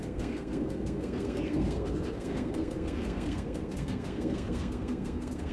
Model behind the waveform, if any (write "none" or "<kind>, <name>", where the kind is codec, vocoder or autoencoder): codec, SNAC